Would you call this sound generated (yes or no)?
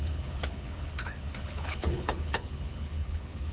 yes